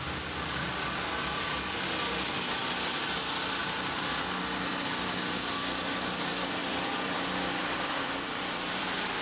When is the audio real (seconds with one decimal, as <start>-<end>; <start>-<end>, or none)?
0.0-3.6; 4.2-6.6